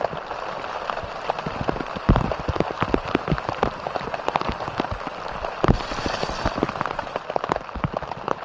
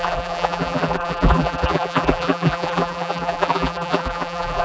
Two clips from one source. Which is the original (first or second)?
first